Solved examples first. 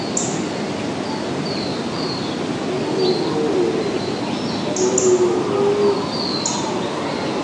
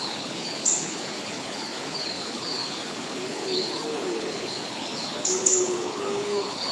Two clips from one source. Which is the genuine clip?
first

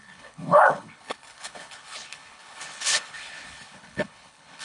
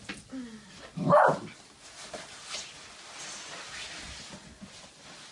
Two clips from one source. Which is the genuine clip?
second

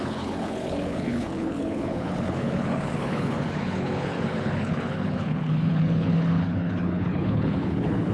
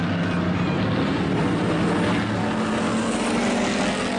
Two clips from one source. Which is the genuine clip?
second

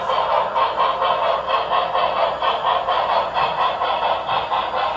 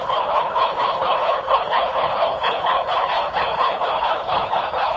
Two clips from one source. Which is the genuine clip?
first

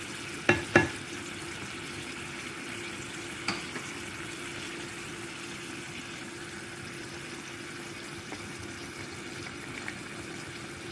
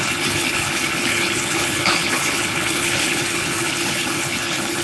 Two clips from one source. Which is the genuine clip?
first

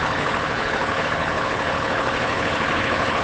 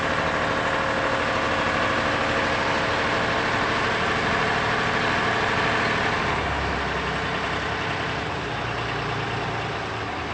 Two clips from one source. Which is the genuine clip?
second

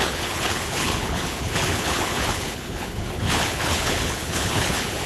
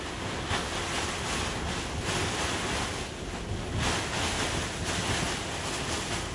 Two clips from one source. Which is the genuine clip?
second